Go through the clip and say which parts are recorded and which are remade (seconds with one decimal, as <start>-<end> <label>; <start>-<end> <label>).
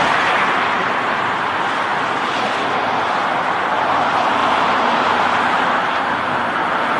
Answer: 0.0-0.8 recorded; 0.8-1.3 remade; 1.3-4.4 recorded; 4.4-5.1 remade; 5.1-7.0 recorded